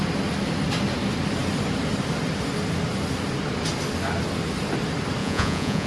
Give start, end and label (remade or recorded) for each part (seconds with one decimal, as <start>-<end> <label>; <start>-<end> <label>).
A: 0.0-5.2 recorded; 5.2-5.9 remade